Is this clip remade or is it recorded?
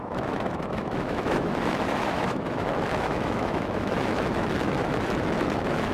remade